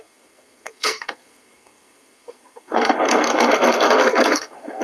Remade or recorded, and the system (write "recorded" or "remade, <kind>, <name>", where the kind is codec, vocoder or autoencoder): remade, codec, SNAC